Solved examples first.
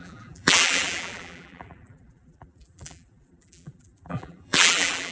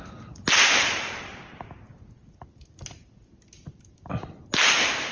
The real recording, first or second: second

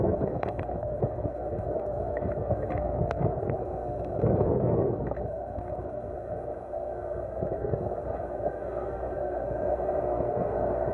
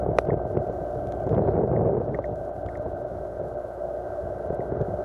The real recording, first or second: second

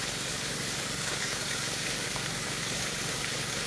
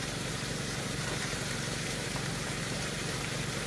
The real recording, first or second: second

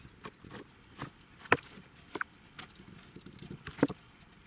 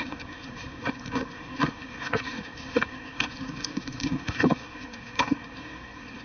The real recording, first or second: first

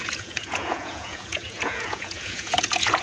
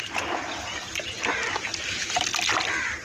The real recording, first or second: second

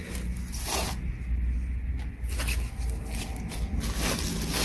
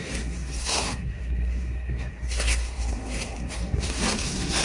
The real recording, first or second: first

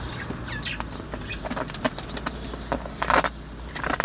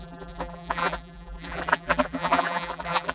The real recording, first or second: first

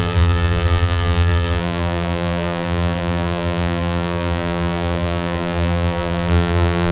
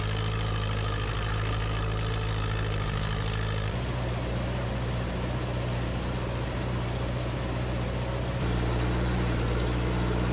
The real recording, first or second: second